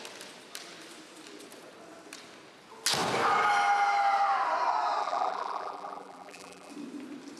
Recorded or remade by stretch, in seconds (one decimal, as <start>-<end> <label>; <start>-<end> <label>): 0.0-5.0 recorded; 5.0-6.7 remade; 6.7-7.4 recorded